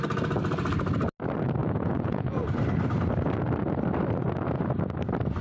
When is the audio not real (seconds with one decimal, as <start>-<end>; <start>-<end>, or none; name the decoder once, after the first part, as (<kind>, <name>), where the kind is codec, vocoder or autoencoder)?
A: 1.6-2.4 (vocoder, Vocos)